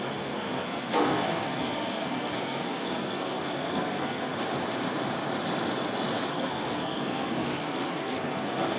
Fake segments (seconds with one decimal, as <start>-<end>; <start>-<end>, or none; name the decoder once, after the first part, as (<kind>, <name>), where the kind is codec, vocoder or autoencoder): 0.0-4.3 (codec, SNAC); 6.3-8.8

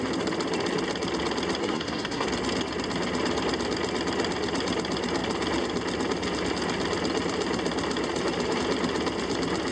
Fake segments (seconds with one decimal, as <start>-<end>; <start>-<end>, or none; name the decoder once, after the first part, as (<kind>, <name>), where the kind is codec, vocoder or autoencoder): 1.6-2.3 (codec, SNAC)

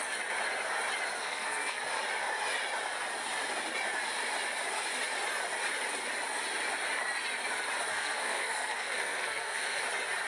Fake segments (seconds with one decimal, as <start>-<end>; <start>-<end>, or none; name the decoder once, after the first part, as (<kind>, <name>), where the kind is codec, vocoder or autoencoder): 1.2-1.8 (codec, SNAC); 7.9-9.8

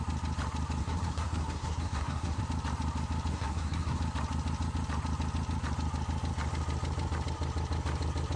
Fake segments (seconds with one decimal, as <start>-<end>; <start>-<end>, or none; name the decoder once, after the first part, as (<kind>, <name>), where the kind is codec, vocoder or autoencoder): 0.8-2.4 (codec, SNAC); 3.3-4.0

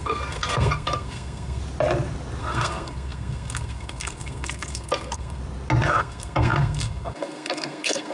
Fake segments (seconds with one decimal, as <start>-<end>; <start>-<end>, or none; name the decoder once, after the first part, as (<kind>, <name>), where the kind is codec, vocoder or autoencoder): 0.0-1.6 (codec, SNAC); 2.4-5.4; 6.0-8.1

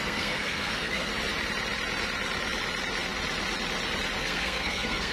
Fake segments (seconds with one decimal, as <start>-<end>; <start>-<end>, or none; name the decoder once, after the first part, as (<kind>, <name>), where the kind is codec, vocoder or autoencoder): 0.0-1.1 (codec, SNAC); 4.2-5.1

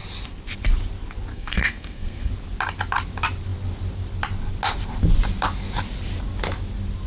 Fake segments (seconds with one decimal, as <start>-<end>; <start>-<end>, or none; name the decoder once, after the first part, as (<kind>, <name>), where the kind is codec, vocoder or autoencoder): 1.3-2.3 (codec, SNAC)